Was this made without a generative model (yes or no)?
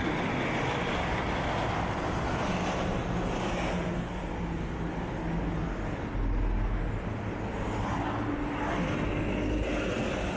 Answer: yes